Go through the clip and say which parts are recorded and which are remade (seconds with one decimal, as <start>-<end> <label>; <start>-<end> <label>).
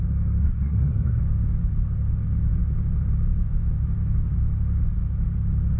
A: 0.0-0.4 recorded; 0.4-1.2 remade; 1.2-5.8 recorded